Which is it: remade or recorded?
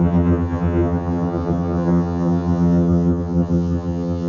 remade